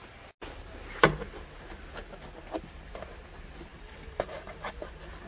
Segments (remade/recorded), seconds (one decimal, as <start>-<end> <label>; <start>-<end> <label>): 0.0-3.7 recorded; 3.7-4.7 remade; 4.7-5.3 recorded